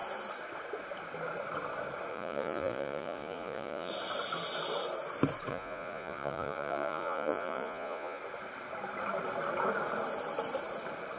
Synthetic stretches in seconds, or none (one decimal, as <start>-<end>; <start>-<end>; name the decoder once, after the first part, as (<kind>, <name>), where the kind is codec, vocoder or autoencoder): 2.1-3.9 (vocoder, Vocos); 5.5-8.2